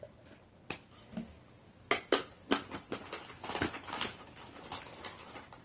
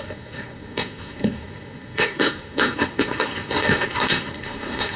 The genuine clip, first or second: first